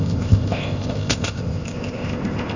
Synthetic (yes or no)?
yes